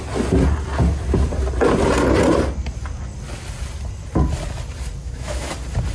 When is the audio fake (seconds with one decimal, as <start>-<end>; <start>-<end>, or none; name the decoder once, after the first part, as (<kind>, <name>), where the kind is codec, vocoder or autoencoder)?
5.0-5.5 (autoencoder, DAC-VAE)